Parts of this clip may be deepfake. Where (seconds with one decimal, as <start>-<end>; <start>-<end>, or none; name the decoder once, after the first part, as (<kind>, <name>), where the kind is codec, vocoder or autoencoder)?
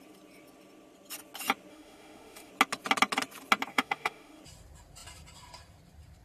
1.7-2.5 (autoencoder, DAC-VAE); 3.7-4.4